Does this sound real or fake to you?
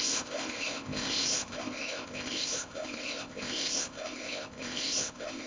fake